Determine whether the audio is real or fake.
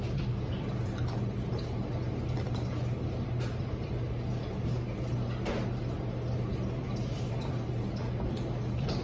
real